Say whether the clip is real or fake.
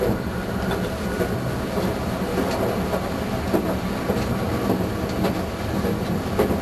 real